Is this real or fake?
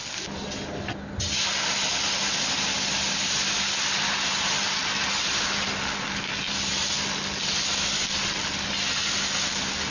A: real